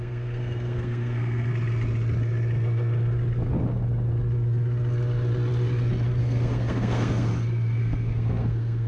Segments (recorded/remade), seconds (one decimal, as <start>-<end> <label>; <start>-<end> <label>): 0.0-1.5 remade; 1.5-6.2 recorded; 6.2-7.3 remade; 7.3-7.8 recorded; 7.8-8.9 remade